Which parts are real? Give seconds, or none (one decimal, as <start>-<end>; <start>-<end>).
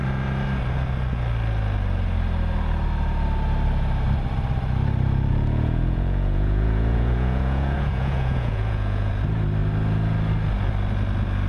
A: 0.0-5.3; 9.1-11.5